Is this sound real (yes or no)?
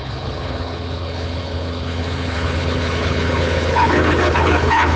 no